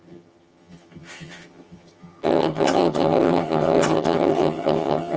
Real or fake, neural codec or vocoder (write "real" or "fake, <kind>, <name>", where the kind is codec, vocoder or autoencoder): fake, vocoder, HiFi-GAN